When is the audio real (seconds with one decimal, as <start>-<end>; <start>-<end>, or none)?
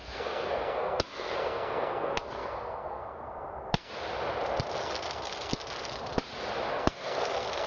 3.9-4.8; 5.9-6.7